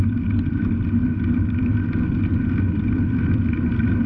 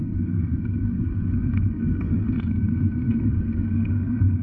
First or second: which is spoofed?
second